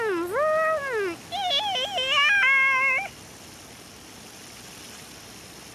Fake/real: real